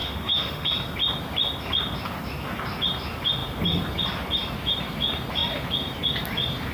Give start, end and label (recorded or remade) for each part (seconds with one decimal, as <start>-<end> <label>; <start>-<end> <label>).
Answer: 0.0-0.7 remade; 0.7-6.7 recorded